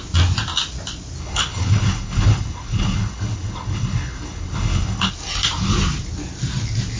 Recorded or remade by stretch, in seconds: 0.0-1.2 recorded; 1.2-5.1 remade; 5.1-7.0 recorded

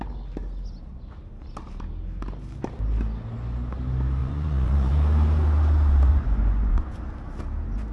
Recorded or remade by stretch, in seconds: 0.0-4.2 recorded; 4.2-4.9 remade; 4.9-6.1 recorded; 6.1-7.0 remade; 7.0-7.9 recorded

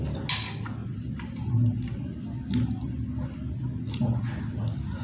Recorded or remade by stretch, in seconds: 0.0-0.8 recorded; 0.8-1.5 remade; 1.5-5.0 recorded

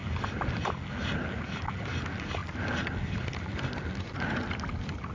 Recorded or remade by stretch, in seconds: 0.0-5.1 recorded

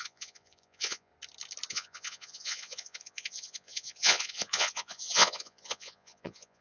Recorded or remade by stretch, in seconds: 0.0-1.1 remade; 1.1-1.7 recorded; 1.7-6.6 remade

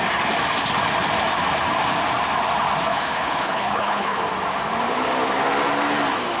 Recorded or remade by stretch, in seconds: 0.0-2.9 recorded; 2.9-4.2 remade; 4.2-6.4 recorded

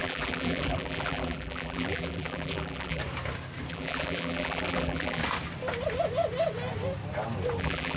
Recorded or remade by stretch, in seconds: 0.0-3.0 remade; 3.0-3.7 recorded; 3.7-5.2 remade; 5.2-7.6 recorded; 7.6-8.0 remade

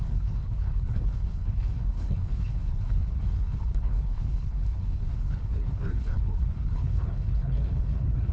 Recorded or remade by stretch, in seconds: 0.0-8.3 remade